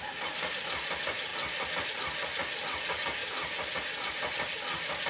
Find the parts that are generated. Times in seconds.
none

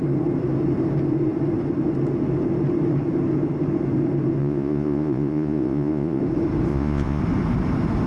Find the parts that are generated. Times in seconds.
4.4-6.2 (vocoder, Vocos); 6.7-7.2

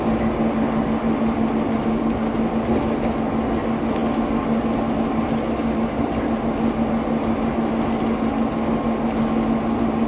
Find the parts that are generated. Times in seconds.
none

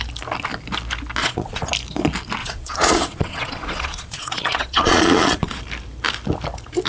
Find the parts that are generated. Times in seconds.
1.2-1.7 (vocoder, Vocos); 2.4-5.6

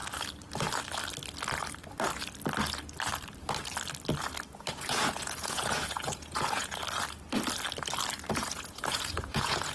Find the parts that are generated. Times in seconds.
4.7-6.8 (vocoder, Vocos); 8.3-9.7